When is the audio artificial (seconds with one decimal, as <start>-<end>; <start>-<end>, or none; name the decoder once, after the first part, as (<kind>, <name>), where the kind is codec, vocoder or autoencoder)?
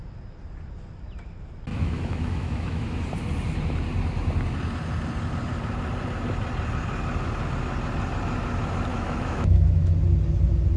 1.7-3.1 (autoencoder, DAC-VAE); 8.9-9.9